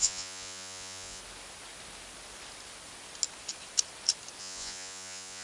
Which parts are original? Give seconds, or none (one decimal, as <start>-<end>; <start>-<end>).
1.2-4.4